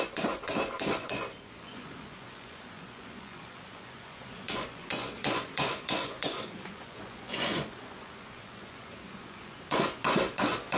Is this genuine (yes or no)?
no